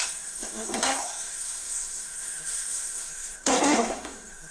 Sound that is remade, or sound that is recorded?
remade